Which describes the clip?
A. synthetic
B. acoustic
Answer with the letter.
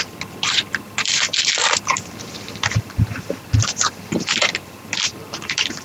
A